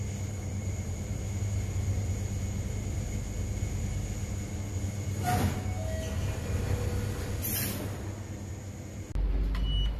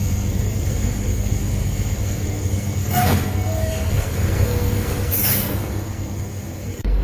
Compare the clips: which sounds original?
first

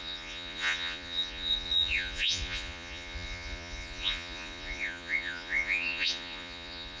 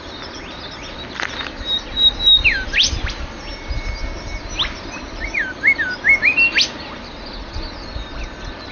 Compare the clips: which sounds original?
second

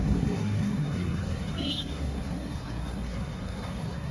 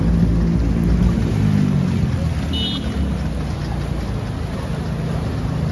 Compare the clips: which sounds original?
second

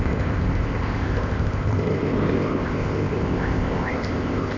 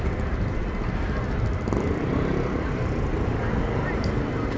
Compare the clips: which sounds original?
second